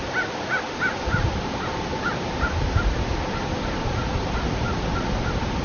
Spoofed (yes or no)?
no